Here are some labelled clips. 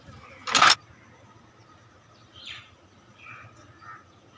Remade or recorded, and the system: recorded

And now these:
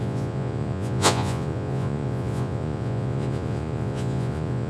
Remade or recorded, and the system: remade, vocoder, Vocos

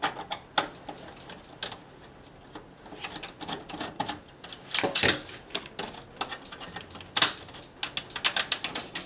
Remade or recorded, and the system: recorded